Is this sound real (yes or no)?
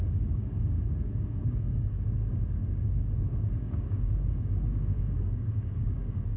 no